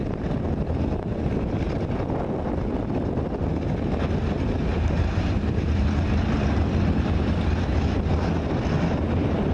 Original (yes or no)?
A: yes